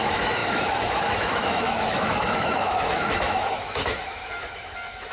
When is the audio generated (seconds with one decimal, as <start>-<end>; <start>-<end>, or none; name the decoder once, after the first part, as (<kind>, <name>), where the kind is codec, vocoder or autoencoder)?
0.0-5.1 (autoencoder, DAC-VAE)